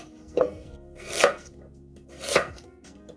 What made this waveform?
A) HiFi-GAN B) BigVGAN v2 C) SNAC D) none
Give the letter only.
C